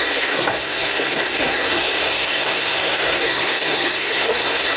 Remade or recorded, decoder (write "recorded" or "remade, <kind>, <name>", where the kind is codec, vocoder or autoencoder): remade, codec, SNAC